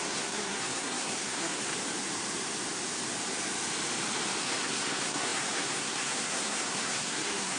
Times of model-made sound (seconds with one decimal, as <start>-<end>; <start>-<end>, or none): 0.0-1.7; 4.4-7.6